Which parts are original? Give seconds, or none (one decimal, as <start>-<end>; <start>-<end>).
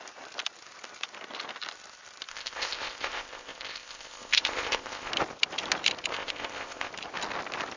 0.0-2.3; 5.1-6.1; 6.9-7.8